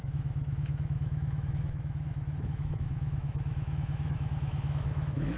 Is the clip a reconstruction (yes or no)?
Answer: yes